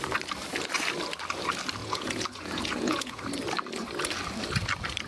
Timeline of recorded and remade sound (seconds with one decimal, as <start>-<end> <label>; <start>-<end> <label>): 0.0-1.8 recorded; 1.8-3.2 remade; 3.2-5.1 recorded